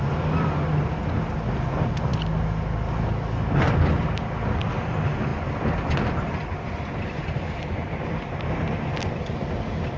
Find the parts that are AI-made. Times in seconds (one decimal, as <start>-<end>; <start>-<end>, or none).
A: none